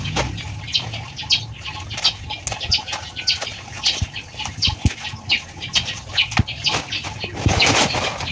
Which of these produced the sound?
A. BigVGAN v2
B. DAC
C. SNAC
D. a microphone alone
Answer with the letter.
D